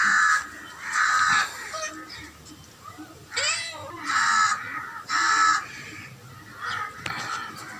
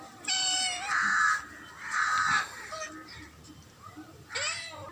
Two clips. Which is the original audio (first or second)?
first